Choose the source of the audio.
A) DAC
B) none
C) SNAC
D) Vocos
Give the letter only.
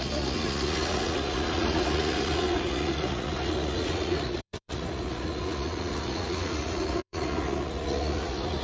D